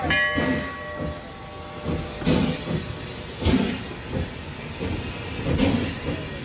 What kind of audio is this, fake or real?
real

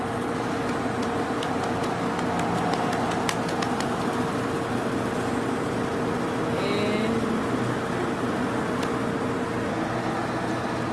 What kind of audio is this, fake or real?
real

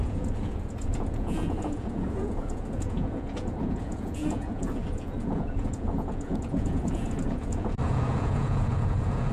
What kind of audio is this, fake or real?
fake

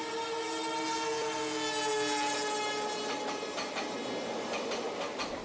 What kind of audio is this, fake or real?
real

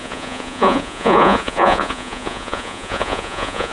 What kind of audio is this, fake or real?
fake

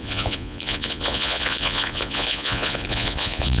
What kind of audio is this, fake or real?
fake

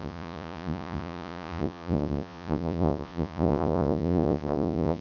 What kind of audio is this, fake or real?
fake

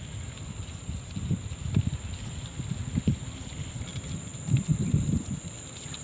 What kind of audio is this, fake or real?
real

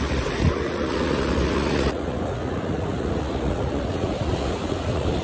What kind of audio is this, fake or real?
fake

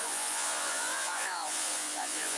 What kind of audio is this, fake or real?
fake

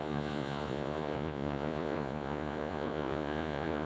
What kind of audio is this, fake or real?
fake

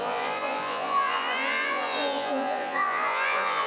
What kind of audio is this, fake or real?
fake